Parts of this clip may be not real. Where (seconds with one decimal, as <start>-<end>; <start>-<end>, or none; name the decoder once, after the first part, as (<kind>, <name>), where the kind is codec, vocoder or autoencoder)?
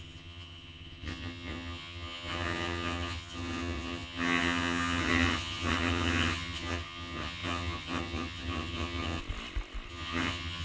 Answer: 0.0-9.2 (vocoder, HiFi-GAN); 9.9-10.6